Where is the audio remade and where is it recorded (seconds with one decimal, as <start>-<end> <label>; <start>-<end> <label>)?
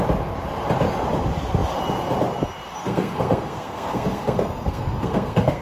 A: 0.0-2.8 recorded; 2.8-5.6 remade